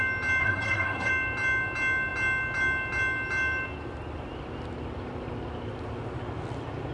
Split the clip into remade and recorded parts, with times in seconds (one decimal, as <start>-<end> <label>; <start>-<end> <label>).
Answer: 0.0-0.4 recorded; 0.4-1.1 remade; 1.1-6.9 recorded